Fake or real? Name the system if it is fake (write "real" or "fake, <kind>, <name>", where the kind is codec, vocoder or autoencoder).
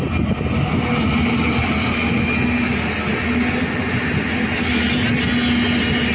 real